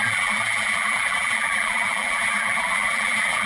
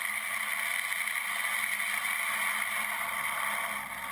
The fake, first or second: first